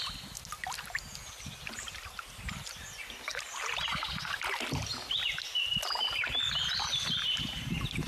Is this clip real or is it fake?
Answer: real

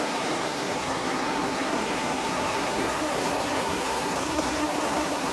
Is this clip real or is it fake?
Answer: fake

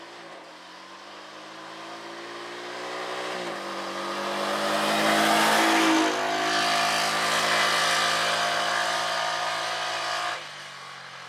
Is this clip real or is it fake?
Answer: real